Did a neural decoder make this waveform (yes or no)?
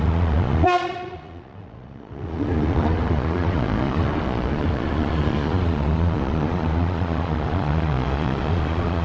yes